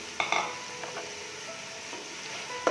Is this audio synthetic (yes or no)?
no